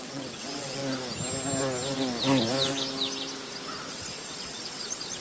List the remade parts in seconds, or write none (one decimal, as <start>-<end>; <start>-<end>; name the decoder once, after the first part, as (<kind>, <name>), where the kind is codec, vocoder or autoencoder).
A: 0.0-0.8 (vocoder, WaveNeXt); 3.9-5.2